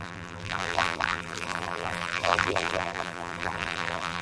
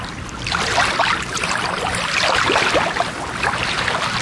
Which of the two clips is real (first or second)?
second